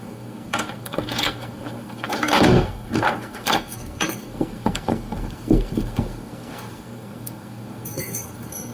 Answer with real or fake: fake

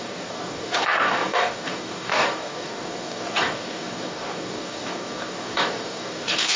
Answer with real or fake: fake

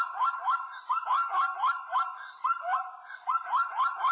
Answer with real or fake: real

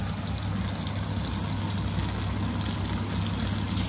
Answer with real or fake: real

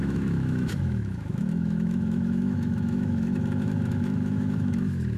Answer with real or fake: fake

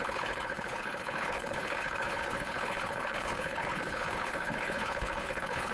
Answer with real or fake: fake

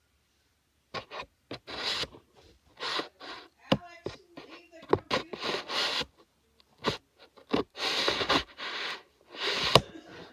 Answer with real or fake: real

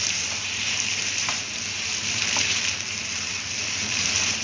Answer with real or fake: fake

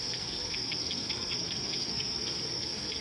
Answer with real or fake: fake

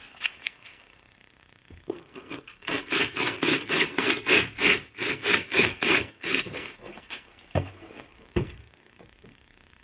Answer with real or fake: fake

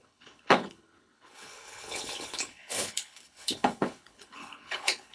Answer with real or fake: fake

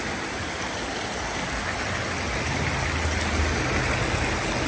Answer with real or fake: real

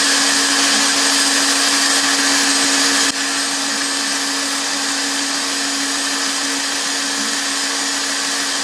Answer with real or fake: real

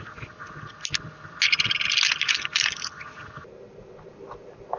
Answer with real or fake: real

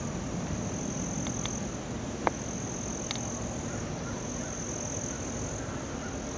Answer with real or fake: real